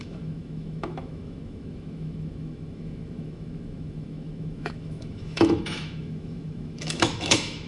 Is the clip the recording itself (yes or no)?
no